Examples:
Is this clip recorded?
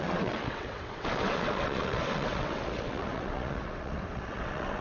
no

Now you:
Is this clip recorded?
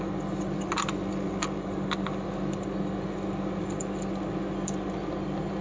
yes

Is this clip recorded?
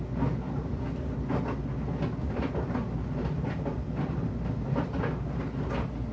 yes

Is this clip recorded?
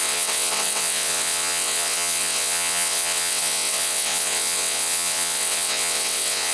no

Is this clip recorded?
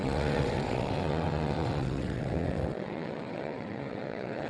no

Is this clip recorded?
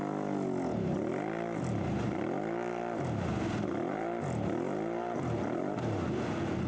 yes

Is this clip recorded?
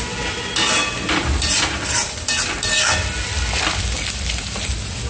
yes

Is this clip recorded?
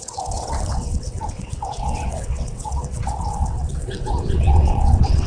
no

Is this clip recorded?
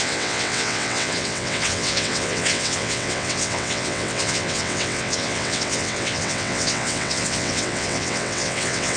no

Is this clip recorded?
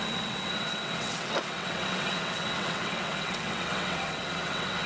no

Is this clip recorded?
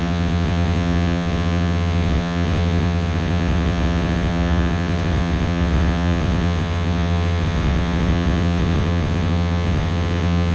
no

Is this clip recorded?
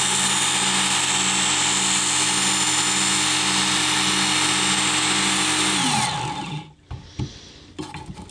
yes